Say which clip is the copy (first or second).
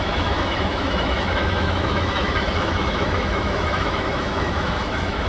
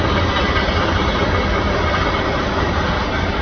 first